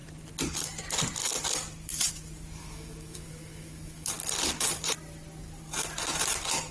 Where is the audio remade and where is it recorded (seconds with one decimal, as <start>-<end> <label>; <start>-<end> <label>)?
0.0-2.6 recorded; 2.6-4.1 remade; 4.1-6.7 recorded